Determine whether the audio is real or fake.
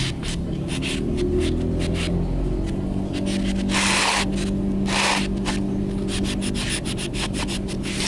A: real